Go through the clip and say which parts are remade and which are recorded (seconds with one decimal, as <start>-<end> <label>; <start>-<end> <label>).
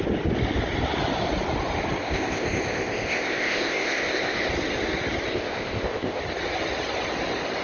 0.0-2.0 recorded; 2.0-4.5 remade; 4.5-5.3 recorded; 5.3-6.2 remade; 6.2-7.6 recorded